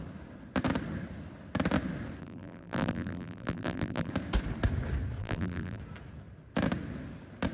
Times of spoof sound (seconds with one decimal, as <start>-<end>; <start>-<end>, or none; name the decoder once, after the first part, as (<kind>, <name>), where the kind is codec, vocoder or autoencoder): 2.2-4.1 (vocoder, BigVGAN v2); 5.2-5.8